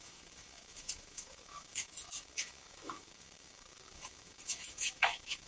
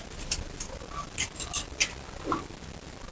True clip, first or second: second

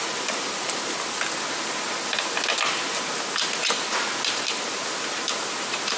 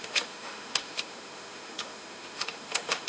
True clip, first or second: first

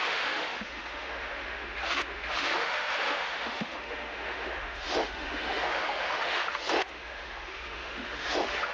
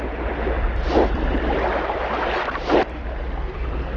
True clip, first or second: second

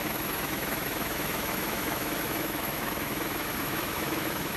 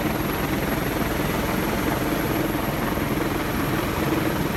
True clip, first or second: second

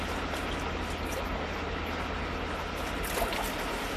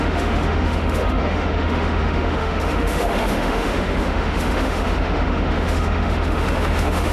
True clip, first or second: first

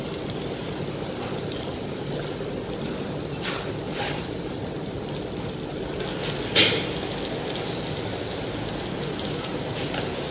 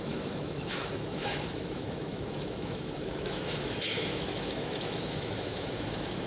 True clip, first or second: first